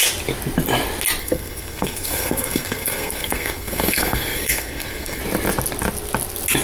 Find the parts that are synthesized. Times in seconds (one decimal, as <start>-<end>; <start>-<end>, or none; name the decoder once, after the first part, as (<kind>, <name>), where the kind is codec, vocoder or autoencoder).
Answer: 1.2-5.2 (codec, SNAC)